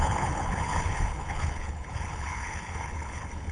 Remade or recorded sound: remade